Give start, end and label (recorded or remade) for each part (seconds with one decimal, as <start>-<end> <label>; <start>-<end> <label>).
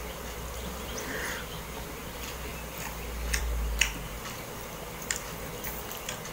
0.0-6.3 recorded